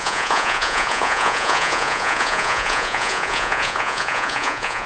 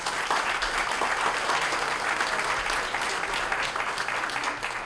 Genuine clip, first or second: second